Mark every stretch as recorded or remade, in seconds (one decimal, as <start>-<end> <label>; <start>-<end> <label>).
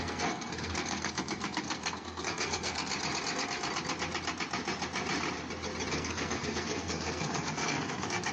0.0-2.9 remade; 2.9-5.9 recorded; 5.9-8.3 remade